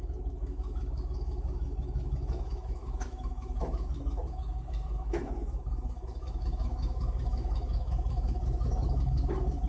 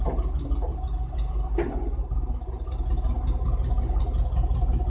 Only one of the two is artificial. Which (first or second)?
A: first